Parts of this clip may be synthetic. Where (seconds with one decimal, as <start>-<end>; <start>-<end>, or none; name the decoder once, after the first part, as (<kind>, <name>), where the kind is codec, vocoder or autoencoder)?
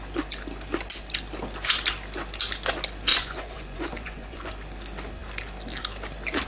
3.1-4.5 (vocoder, Vocos)